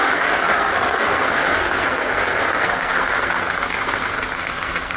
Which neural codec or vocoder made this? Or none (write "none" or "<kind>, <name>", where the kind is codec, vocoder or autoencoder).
codec, SNAC